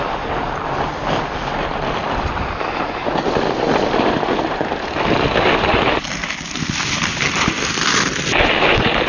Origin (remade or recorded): recorded